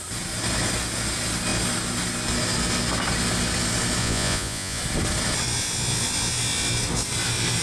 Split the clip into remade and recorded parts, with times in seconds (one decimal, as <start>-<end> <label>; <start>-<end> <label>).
0.0-4.0 recorded; 4.0-4.8 remade; 4.8-7.6 recorded